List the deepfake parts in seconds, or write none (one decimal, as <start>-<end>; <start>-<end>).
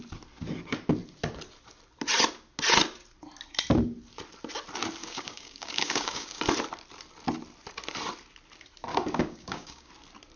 5.0-6.4; 8.9-9.9